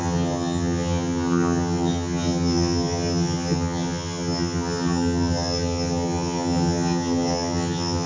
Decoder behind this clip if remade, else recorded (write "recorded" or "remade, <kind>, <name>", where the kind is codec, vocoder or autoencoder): remade, vocoder, HiFi-GAN